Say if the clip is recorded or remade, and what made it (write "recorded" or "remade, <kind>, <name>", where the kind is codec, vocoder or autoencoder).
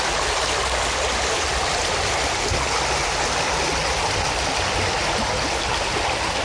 recorded